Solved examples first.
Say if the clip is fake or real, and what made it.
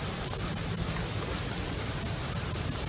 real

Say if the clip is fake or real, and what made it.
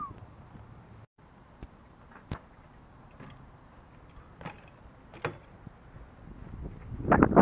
real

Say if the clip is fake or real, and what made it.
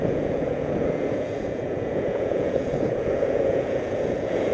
fake, vocoder, Vocos